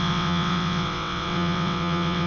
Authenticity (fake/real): fake